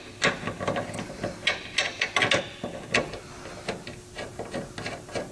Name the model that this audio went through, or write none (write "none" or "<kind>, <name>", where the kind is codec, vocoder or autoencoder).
none